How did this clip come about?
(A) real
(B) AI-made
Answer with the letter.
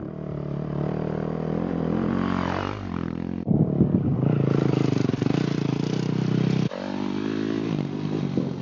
A